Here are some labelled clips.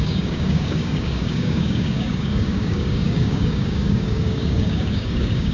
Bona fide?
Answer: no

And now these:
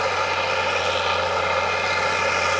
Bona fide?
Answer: yes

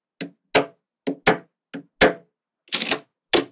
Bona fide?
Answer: yes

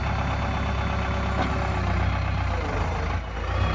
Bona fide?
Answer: yes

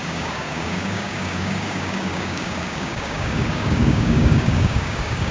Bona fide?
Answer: no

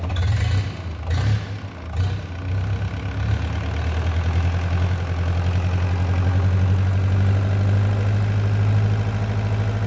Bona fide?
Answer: yes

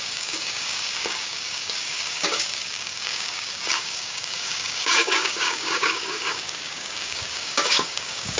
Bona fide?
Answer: no